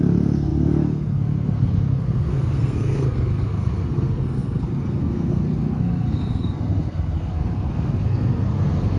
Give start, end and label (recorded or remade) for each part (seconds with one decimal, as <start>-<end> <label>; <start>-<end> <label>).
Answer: 0.0-9.0 remade